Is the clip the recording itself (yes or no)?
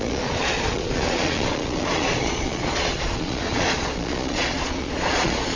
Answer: no